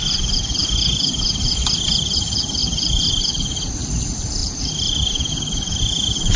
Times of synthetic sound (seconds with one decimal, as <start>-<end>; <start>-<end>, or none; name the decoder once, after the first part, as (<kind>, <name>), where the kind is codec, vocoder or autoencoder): 2.6-3.2 (vocoder, BigVGAN v2); 4.4-5.3